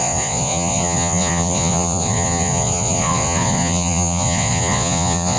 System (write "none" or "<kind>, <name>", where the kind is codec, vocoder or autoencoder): vocoder, Vocos